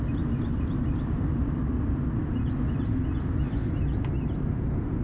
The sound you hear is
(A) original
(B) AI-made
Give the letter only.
A